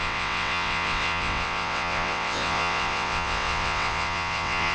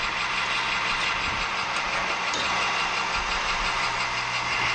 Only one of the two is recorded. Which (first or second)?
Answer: second